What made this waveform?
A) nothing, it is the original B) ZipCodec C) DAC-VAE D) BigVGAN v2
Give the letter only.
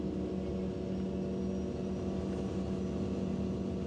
A